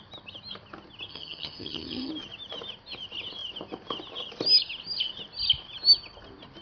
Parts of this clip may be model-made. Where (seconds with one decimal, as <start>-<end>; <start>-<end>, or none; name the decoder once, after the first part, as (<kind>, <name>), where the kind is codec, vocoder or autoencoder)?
1.1-2.1 (vocoder, HiFi-GAN)

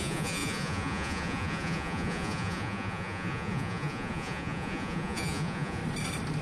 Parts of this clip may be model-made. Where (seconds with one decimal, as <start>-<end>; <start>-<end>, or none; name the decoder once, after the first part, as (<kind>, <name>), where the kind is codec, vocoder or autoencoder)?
0.0-5.8 (vocoder, Vocos)